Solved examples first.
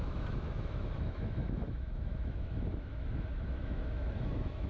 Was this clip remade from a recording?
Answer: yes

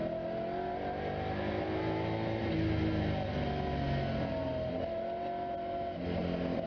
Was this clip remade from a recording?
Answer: no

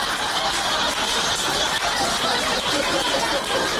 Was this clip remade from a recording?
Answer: no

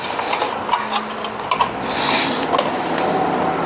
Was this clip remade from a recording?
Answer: no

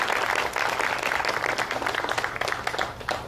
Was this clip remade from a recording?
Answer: no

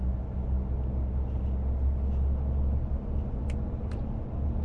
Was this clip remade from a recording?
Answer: no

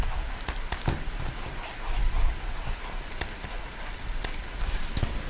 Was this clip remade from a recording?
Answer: yes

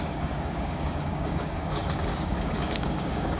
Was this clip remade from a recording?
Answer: yes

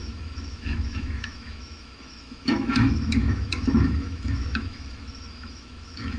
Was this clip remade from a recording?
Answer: yes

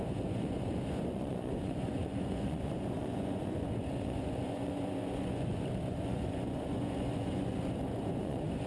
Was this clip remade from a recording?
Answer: yes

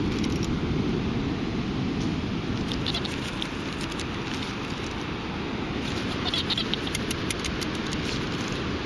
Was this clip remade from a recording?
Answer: no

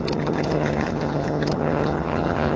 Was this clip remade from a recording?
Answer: yes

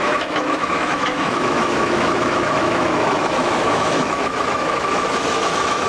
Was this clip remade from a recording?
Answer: yes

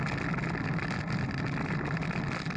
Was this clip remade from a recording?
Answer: no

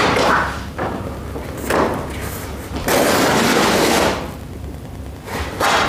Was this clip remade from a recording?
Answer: no